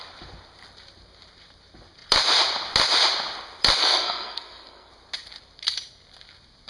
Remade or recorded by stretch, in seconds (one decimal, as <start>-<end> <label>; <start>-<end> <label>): 0.0-3.8 recorded; 3.8-4.9 remade; 4.9-6.7 recorded